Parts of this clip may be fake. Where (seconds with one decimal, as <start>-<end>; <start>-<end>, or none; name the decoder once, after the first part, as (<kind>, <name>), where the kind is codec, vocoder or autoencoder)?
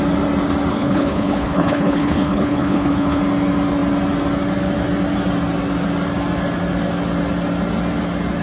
0.7-3.2 (codec, HILCodec)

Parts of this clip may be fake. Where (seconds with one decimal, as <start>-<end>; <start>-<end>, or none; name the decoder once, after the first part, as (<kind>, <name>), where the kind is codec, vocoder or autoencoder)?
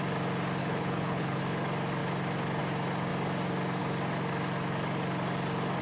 0.6-1.4 (codec, HILCodec)